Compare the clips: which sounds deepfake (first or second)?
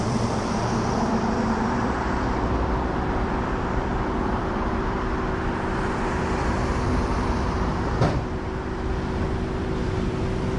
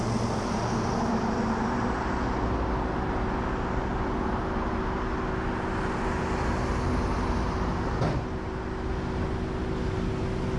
first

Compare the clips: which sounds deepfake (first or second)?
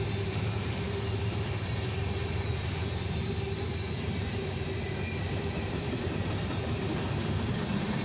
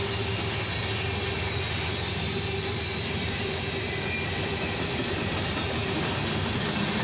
first